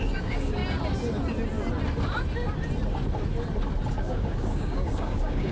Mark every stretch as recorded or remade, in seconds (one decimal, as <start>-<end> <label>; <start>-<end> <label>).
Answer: 0.0-0.6 remade; 0.6-3.9 recorded; 3.9-5.5 remade